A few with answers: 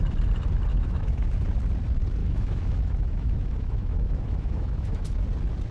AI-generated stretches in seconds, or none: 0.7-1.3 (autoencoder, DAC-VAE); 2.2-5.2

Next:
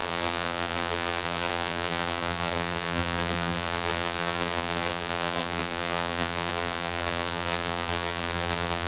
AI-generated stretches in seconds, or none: 0.0-8.9 (vocoder, BigVGAN v2)

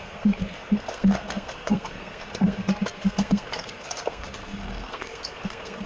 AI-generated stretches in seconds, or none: 0.0-5.9 (codec, SNAC)

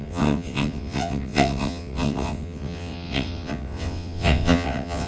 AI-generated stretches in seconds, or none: 0.0-5.1 (vocoder, WaveNeXt)

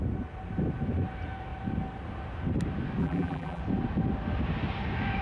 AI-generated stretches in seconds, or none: 3.0-3.6 (vocoder, BigVGAN v2)